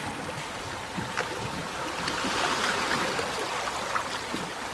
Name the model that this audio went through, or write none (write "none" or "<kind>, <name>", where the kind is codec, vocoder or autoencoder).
none